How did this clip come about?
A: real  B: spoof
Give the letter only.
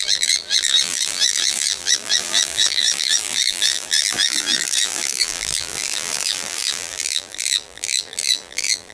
B